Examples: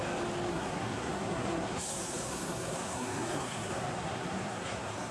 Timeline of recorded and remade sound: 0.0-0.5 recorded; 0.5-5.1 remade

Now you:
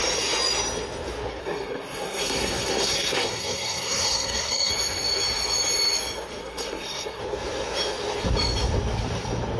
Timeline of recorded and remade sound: 0.0-1.4 recorded; 1.4-4.7 remade; 4.7-6.4 recorded; 6.4-7.2 remade; 7.2-9.6 recorded

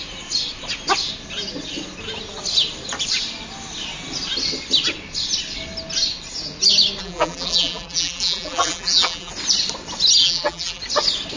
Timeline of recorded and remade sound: 0.0-7.0 recorded; 7.0-9.3 remade; 9.3-10.2 recorded; 10.2-10.8 remade; 10.8-11.4 recorded

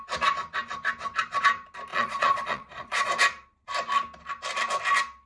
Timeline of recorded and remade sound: 0.0-1.9 recorded; 1.9-3.1 remade; 3.1-5.3 recorded

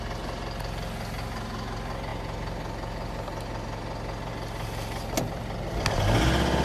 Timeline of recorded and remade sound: 0.0-6.6 recorded

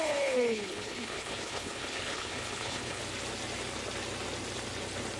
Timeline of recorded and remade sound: 0.0-3.0 remade; 3.0-5.2 recorded